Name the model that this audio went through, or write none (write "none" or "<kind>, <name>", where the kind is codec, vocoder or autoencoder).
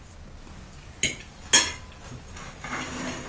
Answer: none